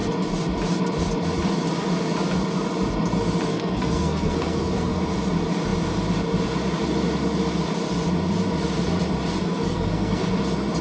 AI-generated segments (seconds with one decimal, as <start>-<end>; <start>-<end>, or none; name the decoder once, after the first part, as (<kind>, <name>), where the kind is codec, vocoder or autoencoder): 3.5-5.0 (codec, SNAC); 9.4-10.3